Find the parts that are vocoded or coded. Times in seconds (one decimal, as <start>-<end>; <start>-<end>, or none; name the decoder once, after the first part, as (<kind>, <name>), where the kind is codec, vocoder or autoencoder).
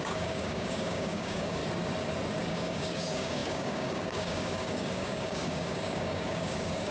0.0-1.6 (codec, DAC); 2.5-6.9